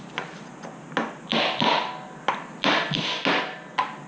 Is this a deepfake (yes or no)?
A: no